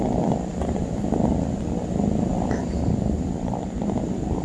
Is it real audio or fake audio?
fake